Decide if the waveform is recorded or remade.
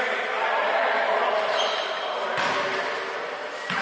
recorded